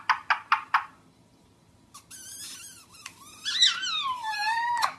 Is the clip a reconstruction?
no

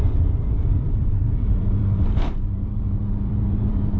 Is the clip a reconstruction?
yes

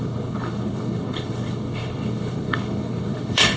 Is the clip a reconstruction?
yes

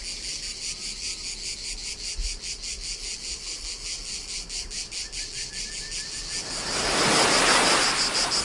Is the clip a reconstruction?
no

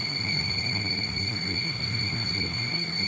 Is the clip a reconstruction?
yes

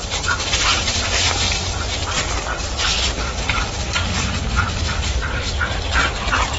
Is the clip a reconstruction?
no